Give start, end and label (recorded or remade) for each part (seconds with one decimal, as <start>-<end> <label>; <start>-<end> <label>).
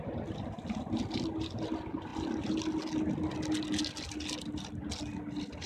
0.0-5.7 recorded